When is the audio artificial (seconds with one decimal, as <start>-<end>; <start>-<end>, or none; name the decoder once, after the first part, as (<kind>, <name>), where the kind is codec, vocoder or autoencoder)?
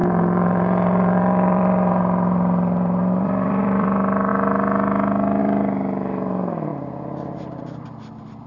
0.0-4.3 (vocoder, BigVGAN v2); 5.4-6.7; 7.6-8.5